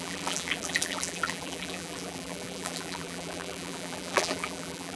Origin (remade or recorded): remade